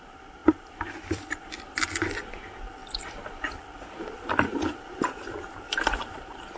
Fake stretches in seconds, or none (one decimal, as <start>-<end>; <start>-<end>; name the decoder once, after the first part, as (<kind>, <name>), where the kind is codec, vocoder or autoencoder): 0.4-1.9 (vocoder, BigVGAN v2); 2.8-6.6